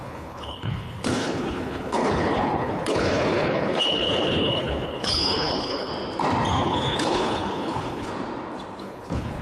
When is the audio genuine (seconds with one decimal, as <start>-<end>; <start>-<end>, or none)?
5.9-6.5; 8.1-8.8